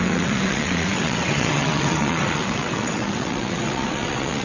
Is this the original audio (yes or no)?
no